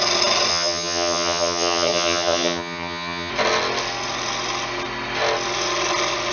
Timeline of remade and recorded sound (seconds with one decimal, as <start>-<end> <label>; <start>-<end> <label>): 0.0-0.5 recorded; 0.5-3.3 remade; 3.3-6.3 recorded

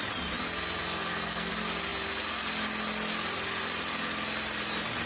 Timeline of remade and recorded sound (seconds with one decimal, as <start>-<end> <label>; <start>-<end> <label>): 0.0-0.8 recorded; 0.8-1.5 remade; 1.5-5.1 recorded

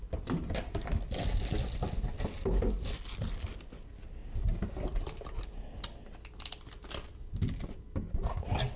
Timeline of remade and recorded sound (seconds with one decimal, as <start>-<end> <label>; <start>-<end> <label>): 0.0-4.2 recorded; 4.2-5.4 remade; 5.4-8.8 recorded

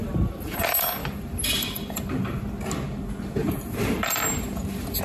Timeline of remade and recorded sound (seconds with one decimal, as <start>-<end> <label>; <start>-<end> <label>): 0.0-0.6 remade; 0.6-1.0 recorded; 1.0-2.4 remade; 2.4-3.4 recorded; 3.4-5.0 remade

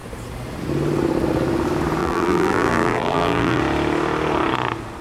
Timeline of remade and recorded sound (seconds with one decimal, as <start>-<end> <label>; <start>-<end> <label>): 0.0-2.0 recorded; 2.0-3.6 remade; 3.6-5.0 recorded

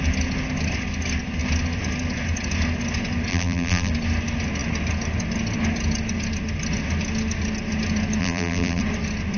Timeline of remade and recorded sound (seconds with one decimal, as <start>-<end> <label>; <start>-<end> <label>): 0.0-3.3 recorded; 3.3-3.9 remade; 3.9-8.2 recorded; 8.2-8.8 remade; 8.8-9.4 recorded